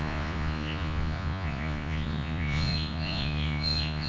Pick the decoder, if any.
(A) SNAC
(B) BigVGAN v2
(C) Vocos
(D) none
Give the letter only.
C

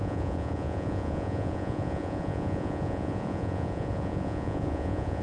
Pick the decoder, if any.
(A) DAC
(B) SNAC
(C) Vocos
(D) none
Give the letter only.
C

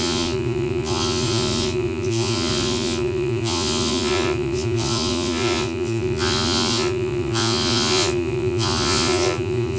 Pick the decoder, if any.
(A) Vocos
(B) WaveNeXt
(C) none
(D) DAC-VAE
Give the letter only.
A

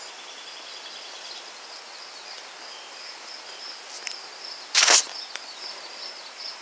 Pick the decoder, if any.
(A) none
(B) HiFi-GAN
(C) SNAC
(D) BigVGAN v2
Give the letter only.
A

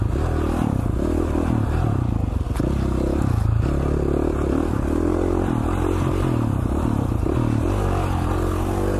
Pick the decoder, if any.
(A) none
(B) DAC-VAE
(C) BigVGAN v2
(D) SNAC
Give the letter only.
A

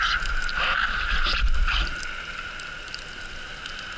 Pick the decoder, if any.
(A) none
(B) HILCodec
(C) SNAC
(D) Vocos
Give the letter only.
A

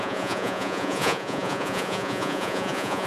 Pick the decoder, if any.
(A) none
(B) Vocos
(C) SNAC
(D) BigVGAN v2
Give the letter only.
B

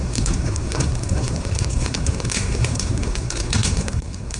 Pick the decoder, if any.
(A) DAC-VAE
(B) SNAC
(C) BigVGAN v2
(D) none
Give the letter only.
B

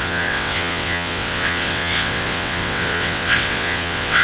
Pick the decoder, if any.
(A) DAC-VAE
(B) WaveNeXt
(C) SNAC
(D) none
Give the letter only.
B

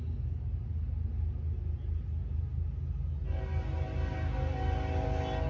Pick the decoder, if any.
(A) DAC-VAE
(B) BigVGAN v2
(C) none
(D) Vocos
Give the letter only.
C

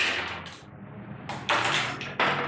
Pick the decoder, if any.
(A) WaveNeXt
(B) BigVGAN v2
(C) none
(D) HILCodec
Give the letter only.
C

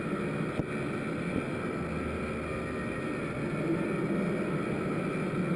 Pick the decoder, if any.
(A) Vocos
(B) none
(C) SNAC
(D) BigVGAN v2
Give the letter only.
B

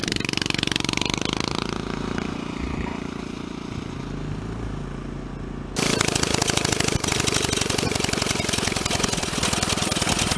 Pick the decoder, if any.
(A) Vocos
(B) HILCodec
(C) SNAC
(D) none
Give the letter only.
D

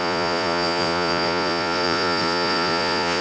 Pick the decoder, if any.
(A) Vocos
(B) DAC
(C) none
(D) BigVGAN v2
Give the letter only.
A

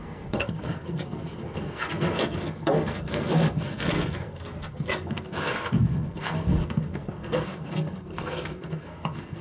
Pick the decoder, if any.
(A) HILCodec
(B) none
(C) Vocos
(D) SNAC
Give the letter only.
D